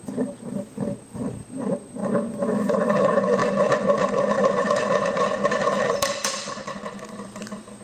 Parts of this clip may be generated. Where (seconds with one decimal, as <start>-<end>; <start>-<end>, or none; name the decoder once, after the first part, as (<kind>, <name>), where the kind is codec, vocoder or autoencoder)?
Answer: 0.0-2.0 (vocoder, BigVGAN v2); 2.7-7.8